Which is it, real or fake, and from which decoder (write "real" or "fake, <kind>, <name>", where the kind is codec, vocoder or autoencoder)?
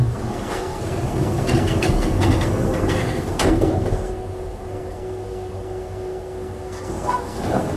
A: fake, codec, SNAC